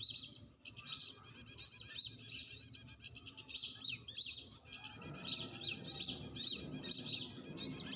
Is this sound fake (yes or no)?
no